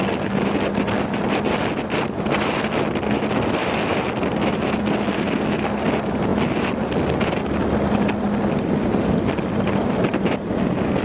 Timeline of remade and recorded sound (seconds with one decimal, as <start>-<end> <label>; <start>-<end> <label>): 0.0-11.0 recorded